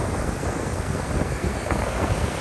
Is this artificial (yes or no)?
yes